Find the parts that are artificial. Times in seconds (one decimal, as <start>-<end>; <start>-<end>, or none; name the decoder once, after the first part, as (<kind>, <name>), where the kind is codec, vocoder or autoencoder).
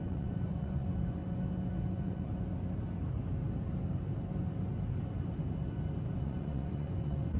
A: 0.0-1.2 (vocoder, Vocos); 1.9-2.3; 6.2-7.4